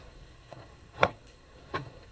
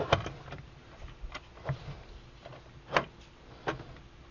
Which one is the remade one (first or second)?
first